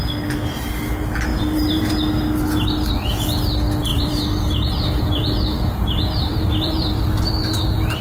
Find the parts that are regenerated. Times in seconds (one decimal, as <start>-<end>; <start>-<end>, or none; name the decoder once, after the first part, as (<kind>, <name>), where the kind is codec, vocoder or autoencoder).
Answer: 1.3-1.9 (vocoder, BigVGAN v2); 3.9-7.3